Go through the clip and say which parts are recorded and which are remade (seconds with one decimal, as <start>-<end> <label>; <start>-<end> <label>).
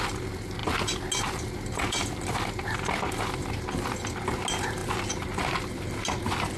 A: 0.0-6.6 recorded